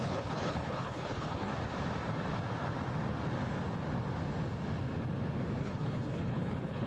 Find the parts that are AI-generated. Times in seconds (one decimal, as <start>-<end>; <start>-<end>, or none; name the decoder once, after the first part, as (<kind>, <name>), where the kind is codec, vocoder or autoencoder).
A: 0.0-1.5 (codec, HILCodec); 5.6-6.9